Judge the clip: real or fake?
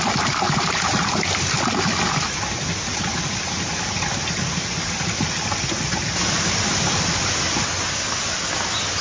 real